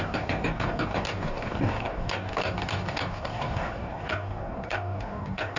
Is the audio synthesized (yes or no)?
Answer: yes